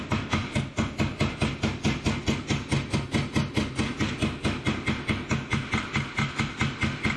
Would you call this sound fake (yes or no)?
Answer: no